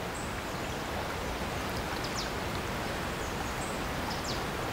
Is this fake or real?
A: real